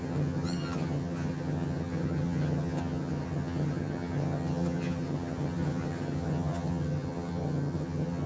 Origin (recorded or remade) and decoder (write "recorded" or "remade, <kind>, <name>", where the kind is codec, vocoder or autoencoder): remade, vocoder, HiFi-GAN